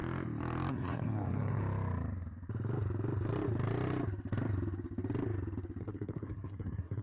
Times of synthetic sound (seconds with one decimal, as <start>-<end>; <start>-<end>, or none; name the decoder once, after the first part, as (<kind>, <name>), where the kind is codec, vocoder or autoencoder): 0.7-1.6 (codec, SNAC); 5.8-7.0